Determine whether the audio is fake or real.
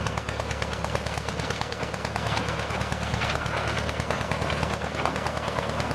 fake